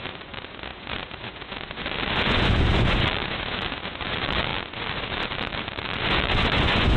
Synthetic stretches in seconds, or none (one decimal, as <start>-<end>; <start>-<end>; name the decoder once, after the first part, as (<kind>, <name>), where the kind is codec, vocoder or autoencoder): 0.0-7.0 (vocoder, Vocos)